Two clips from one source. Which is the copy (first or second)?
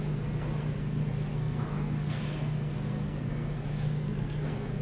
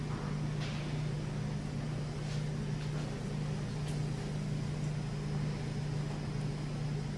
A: first